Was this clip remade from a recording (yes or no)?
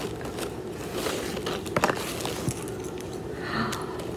no